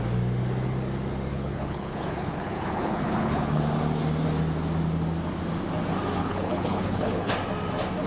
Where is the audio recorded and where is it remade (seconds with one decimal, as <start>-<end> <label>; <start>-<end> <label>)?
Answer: 0.0-1.3 recorded; 1.3-3.6 remade; 3.6-6.2 recorded; 6.2-7.3 remade; 7.3-8.1 recorded